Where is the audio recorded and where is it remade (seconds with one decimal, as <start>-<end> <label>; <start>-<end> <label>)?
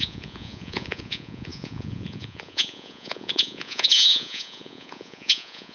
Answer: 0.0-5.7 remade